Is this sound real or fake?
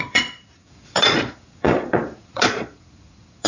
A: fake